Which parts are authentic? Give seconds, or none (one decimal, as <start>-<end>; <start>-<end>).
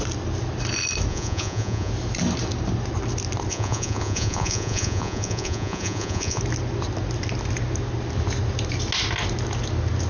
0.0-1.1; 1.9-3.5; 6.4-10.1